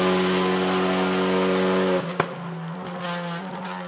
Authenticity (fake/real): real